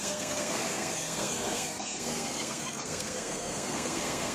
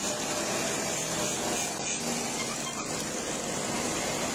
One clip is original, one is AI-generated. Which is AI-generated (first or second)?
first